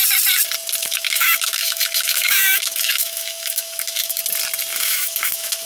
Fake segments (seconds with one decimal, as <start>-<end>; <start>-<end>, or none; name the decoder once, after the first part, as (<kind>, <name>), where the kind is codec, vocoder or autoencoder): 0.8-4.2 (autoencoder, DAC-VAE); 4.7-5.7